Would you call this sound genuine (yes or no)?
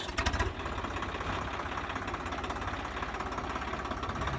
yes